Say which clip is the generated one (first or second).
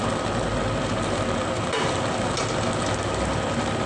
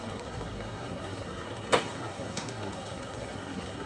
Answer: second